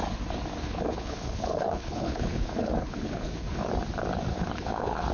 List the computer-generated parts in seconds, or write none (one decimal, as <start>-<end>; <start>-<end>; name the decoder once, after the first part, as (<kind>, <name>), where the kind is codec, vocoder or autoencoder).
0.6-3.7 (codec, HILCodec); 4.3-5.1